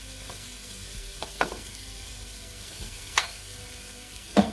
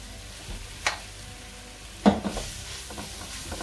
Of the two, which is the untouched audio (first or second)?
second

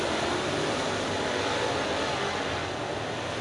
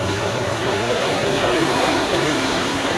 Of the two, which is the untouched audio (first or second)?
first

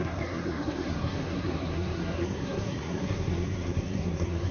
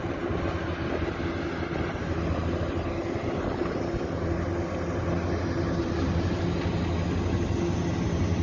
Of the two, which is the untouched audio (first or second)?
second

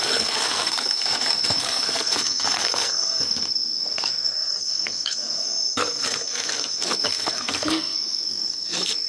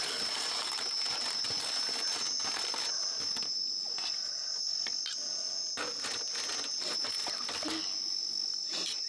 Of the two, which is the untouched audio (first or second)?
second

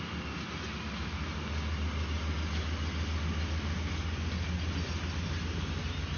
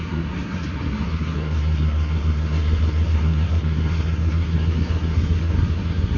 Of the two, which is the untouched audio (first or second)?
first